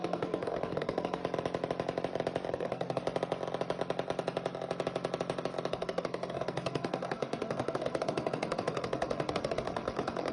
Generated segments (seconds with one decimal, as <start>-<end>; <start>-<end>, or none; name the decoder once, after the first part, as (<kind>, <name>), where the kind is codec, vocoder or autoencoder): 0.0-1.2 (codec, SNAC); 2.5-3.0; 5.7-10.3